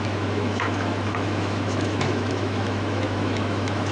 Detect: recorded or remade remade